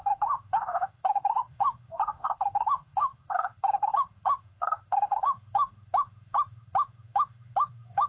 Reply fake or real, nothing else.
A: fake